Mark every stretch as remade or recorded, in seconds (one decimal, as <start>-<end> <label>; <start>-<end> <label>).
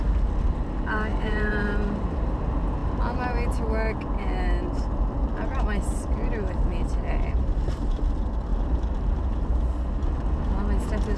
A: 0.0-1.1 recorded; 1.1-2.3 remade; 2.3-8.5 recorded; 8.5-9.6 remade; 9.6-11.2 recorded